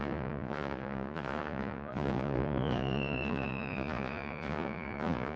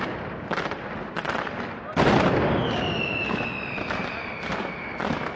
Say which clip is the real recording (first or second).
second